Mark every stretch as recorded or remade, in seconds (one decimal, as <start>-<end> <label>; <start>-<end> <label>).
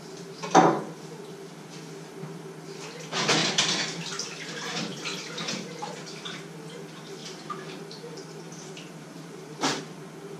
0.0-7.2 recorded; 7.2-9.8 remade; 9.8-10.4 recorded